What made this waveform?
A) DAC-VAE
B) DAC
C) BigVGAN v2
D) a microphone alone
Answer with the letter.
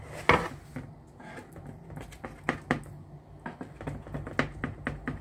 D